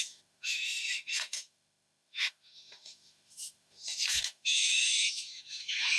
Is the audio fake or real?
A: fake